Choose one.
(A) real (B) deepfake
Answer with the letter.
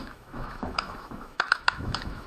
B